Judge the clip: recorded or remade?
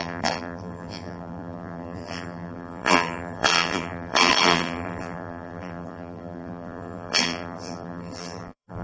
remade